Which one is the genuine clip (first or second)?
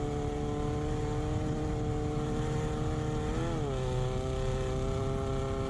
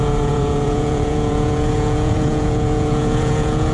first